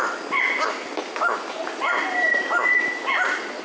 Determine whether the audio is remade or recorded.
recorded